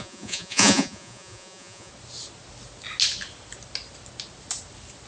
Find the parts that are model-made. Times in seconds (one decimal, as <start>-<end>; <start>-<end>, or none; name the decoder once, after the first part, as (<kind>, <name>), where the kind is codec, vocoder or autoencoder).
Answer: 0.0-1.9 (vocoder, Vocos)